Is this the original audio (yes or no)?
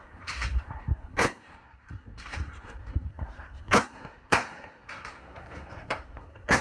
no